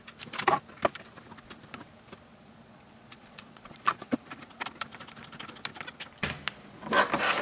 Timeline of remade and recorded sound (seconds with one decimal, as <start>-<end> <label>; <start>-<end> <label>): 0.0-2.3 recorded; 2.3-4.1 remade; 4.1-7.4 recorded